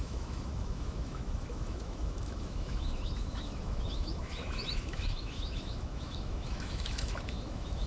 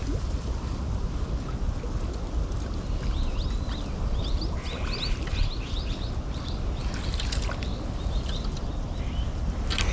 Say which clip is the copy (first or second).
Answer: first